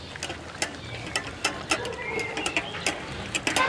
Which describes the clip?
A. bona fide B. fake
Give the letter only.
A